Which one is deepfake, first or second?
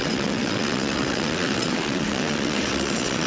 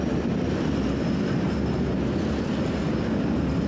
first